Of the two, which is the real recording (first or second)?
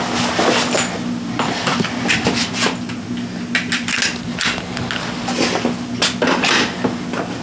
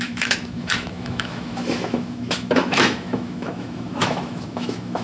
first